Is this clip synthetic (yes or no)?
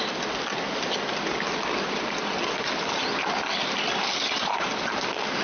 no